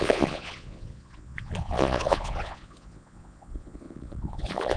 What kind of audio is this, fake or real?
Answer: fake